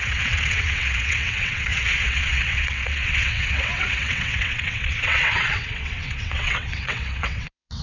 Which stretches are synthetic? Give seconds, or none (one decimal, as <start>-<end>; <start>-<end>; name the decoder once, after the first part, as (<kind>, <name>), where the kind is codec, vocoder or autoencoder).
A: 0.0-7.8 (vocoder, WaveNeXt)

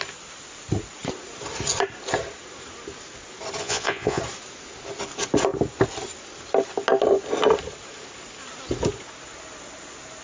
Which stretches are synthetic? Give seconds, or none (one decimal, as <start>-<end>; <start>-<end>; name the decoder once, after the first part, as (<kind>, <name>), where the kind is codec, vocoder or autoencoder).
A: 3.6-4.2 (vocoder, Vocos)

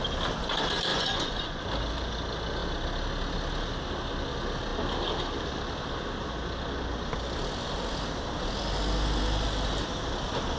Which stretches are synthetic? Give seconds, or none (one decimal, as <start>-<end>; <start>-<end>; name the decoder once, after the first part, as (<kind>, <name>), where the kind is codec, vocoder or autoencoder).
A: 0.9-1.6 (vocoder, Vocos)

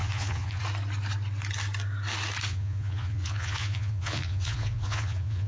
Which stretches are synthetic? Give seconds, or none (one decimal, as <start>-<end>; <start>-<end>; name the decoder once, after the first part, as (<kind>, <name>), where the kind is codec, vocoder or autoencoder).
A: 0.0-0.6 (vocoder, Vocos); 2.5-5.5

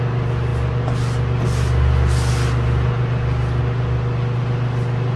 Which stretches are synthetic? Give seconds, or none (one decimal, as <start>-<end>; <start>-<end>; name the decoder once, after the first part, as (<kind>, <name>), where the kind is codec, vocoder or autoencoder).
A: none

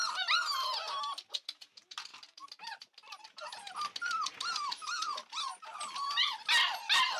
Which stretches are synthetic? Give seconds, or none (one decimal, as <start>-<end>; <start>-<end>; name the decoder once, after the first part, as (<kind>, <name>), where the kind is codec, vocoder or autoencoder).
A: 2.1-3.2 (vocoder, BigVGAN v2)

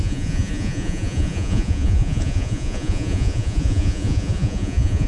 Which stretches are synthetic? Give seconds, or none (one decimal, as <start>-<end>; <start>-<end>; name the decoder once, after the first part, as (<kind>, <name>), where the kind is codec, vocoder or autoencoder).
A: 0.0-5.1 (vocoder, Vocos)